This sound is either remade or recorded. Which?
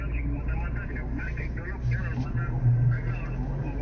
recorded